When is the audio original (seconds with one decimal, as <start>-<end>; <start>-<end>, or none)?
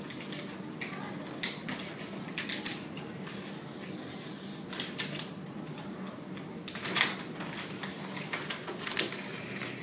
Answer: 0.0-4.5; 9.4-9.8